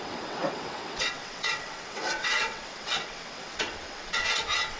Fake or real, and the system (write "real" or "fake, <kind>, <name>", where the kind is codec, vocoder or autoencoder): fake, vocoder, WaveNeXt